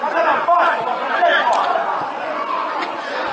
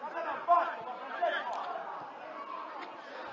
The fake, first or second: first